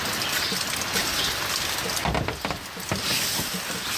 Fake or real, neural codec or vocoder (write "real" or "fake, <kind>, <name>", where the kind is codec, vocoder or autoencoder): real